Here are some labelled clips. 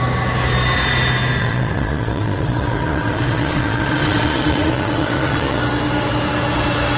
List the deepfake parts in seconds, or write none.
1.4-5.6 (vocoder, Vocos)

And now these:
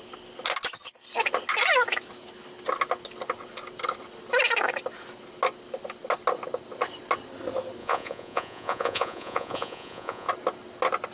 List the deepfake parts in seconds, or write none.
7.8-10.3 (vocoder, Vocos)

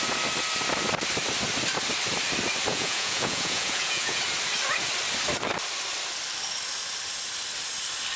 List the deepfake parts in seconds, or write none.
2.7-4.2 (vocoder, Vocos)